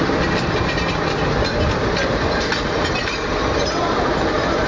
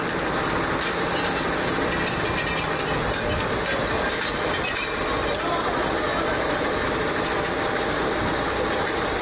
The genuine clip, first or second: second